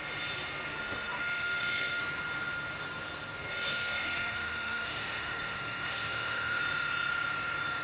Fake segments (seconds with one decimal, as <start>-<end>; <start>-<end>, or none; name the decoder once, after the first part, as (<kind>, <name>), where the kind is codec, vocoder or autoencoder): 0.7-2.0 (autoencoder, DAC-VAE); 3.5-6.6